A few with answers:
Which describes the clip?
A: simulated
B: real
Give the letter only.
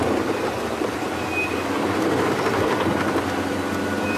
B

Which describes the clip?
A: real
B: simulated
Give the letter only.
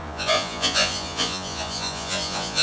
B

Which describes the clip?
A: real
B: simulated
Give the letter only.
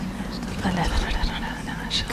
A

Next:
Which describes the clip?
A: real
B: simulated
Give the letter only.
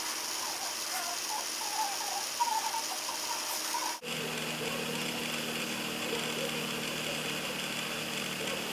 A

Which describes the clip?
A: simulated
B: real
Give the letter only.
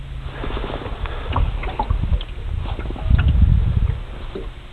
B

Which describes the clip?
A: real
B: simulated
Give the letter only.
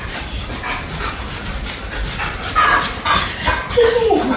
A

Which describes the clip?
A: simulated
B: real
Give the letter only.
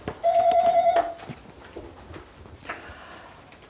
B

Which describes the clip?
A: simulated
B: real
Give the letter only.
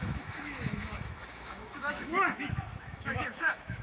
A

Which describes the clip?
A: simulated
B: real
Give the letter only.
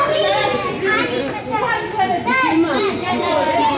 B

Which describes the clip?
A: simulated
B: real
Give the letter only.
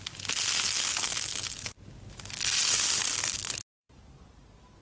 B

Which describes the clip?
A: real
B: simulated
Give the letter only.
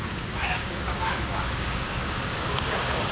B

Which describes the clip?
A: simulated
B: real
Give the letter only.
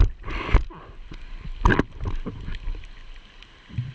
B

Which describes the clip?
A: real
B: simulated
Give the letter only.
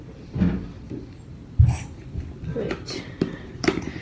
A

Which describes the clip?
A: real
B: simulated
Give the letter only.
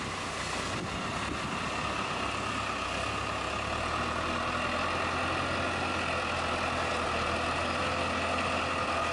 A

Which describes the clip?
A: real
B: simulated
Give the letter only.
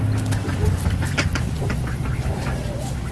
A